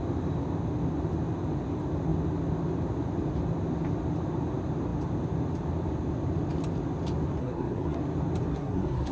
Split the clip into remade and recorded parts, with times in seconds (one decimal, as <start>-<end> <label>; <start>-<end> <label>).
0.0-7.4 recorded; 7.4-8.0 remade; 8.0-8.5 recorded; 8.5-9.1 remade